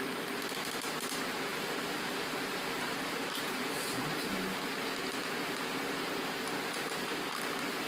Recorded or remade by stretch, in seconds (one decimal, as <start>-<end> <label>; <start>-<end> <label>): 0.0-1.5 recorded; 1.5-4.0 remade; 4.0-5.0 recorded; 5.0-5.8 remade; 5.8-7.9 recorded